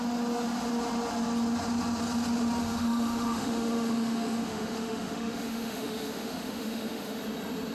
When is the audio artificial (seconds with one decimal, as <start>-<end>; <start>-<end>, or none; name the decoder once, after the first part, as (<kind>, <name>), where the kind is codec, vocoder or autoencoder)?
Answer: 2.6-7.2 (autoencoder, DAC-VAE)